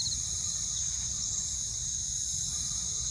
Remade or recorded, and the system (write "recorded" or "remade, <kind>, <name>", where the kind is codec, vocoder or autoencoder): recorded